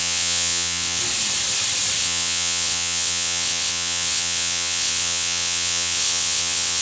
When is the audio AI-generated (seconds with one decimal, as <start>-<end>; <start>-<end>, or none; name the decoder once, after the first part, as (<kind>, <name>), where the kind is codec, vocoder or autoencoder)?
0.0-1.0 (vocoder, WaveNeXt); 2.0-6.8